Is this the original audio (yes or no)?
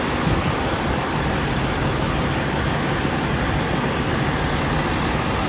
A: yes